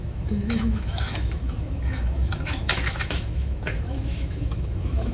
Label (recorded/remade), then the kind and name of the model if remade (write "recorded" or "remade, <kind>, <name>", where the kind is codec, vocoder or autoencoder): remade, autoencoder, DAC-VAE